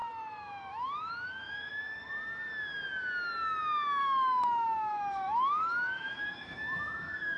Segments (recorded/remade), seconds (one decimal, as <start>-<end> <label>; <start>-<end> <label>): 0.0-2.1 remade; 2.1-4.0 recorded; 4.0-7.4 remade